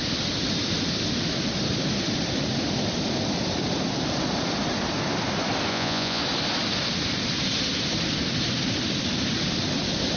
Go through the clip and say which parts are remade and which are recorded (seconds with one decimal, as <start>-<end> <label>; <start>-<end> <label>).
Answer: 0.0-5.7 recorded; 5.7-6.2 remade; 6.2-10.2 recorded